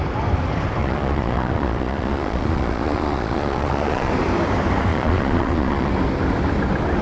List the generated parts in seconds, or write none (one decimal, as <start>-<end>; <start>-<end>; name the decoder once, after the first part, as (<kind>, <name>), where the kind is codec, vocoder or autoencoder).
0.8-4.1 (vocoder, Vocos); 4.9-5.9